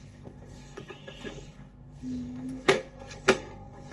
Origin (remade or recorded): remade